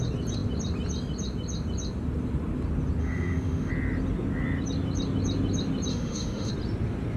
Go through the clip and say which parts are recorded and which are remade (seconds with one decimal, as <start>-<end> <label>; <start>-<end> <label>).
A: 0.0-3.0 recorded; 3.0-3.7 remade; 3.7-5.9 recorded; 5.9-6.5 remade; 6.5-7.2 recorded